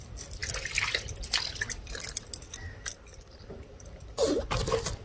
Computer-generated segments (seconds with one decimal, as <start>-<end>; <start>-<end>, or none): none